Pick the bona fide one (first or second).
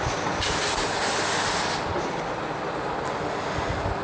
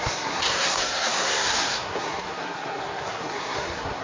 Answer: first